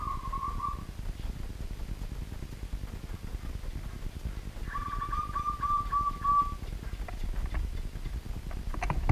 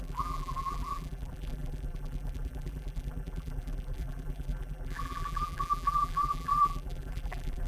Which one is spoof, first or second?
second